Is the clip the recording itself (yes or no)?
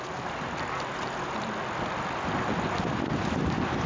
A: yes